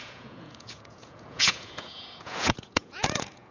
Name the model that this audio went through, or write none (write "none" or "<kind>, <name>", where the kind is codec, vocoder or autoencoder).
vocoder, Vocos